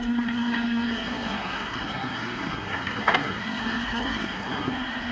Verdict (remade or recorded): remade